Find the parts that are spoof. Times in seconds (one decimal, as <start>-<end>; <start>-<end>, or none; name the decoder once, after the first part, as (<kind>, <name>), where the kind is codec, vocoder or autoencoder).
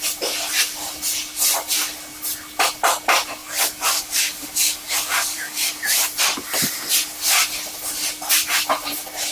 3.4-5.7 (codec, DAC)